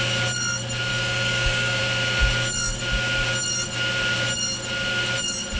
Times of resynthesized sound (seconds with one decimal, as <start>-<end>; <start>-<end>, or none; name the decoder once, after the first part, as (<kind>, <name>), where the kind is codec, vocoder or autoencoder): 0.9-1.8 (codec, DAC)